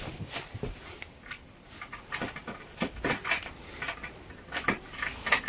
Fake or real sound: real